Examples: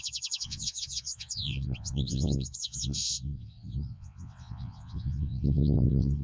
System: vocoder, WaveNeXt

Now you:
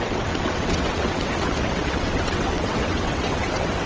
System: vocoder, WaveNeXt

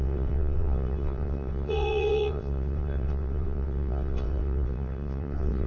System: vocoder, WaveNeXt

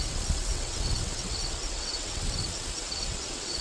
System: vocoder, WaveNeXt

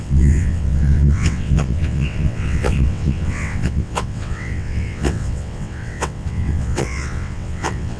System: vocoder, WaveNeXt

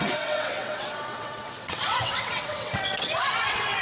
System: vocoder, WaveNeXt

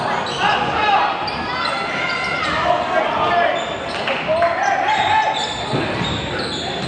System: none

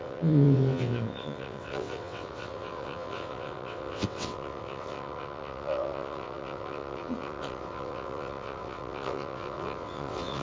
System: vocoder, WaveNeXt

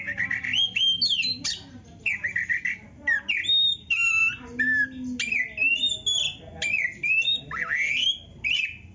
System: none